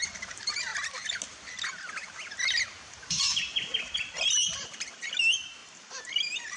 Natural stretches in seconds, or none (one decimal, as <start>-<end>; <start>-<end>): 0.7-3.0; 3.4-4.3